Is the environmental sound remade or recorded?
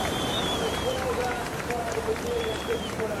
remade